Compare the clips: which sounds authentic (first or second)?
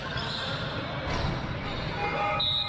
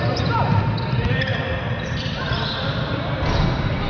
first